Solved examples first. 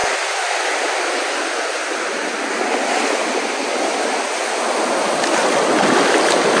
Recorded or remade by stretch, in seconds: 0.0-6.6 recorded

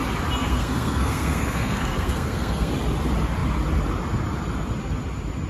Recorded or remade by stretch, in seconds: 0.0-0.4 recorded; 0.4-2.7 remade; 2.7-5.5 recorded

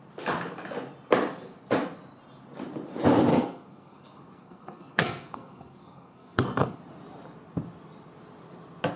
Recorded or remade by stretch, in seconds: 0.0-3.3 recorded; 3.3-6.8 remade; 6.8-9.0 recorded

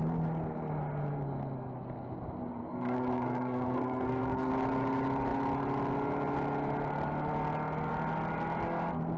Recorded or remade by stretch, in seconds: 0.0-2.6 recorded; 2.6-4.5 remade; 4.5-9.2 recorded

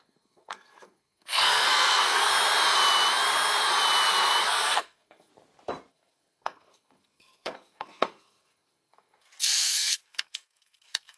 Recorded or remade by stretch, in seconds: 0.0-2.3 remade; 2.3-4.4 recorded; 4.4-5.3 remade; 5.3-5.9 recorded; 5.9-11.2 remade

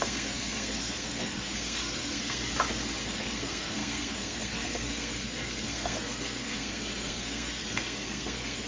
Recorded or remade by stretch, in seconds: 0.0-2.4 remade; 2.4-3.0 recorded; 3.0-8.7 remade

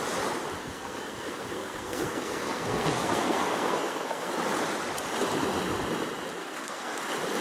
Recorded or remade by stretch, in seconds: 0.0-0.6 recorded; 0.6-4.3 remade; 4.3-6.4 recorded; 6.4-7.0 remade; 7.0-7.4 recorded

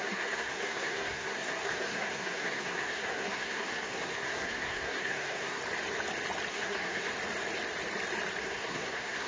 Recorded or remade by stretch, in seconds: 0.0-5.6 remade; 5.6-6.5 recorded; 6.5-7.1 remade; 7.1-8.4 recorded; 8.4-9.3 remade